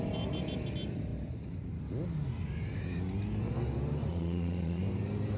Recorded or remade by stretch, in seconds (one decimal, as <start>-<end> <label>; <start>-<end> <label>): 0.0-4.1 recorded; 4.1-4.8 remade; 4.8-5.4 recorded